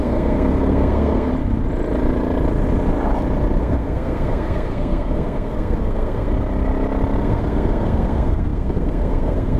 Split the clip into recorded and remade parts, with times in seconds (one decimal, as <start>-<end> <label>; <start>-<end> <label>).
0.0-1.3 remade; 1.3-3.6 recorded; 3.6-6.3 remade; 6.3-7.2 recorded; 7.2-9.6 remade